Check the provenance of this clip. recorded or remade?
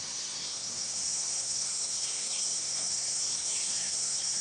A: remade